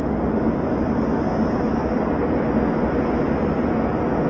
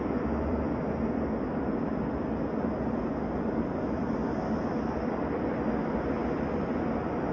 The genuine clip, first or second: first